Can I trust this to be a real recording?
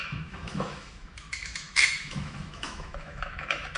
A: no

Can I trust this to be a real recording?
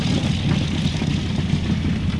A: yes